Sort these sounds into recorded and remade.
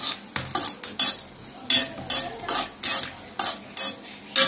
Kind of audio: recorded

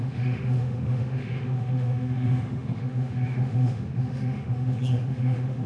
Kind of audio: remade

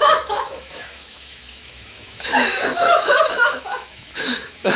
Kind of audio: remade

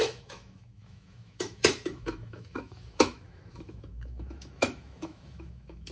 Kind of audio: remade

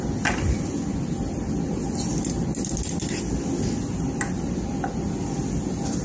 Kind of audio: recorded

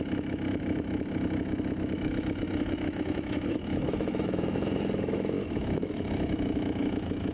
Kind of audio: remade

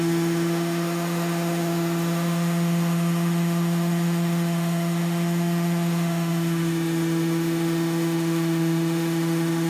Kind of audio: remade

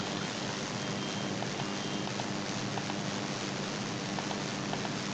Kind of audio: recorded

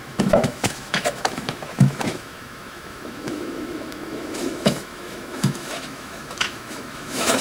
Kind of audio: remade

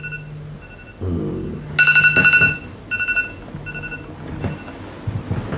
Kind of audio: recorded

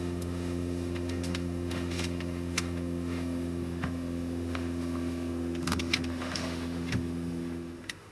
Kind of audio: remade